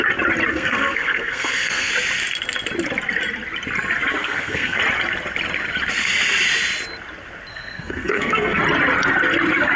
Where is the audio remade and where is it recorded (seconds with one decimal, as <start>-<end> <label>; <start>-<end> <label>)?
0.0-0.5 recorded; 0.5-1.9 remade; 1.9-4.2 recorded; 4.2-4.8 remade; 4.8-7.5 recorded; 7.5-8.6 remade; 8.6-9.8 recorded